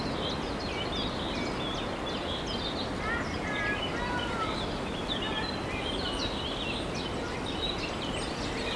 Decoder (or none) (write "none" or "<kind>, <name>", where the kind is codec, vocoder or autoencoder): none